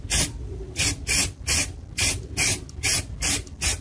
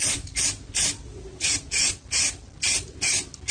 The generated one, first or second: first